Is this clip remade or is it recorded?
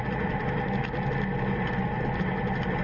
recorded